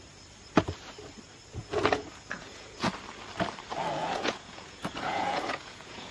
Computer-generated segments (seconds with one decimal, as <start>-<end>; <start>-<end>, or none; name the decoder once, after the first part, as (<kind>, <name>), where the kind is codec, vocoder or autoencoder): 1.6-2.9 (vocoder, Vocos); 4.0-6.1